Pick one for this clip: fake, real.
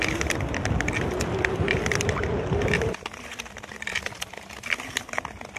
real